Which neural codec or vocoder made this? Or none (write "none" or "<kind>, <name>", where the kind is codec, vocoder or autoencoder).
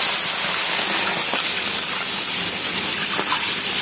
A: none